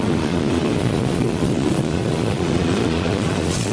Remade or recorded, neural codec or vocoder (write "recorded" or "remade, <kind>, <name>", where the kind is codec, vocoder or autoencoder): remade, vocoder, Vocos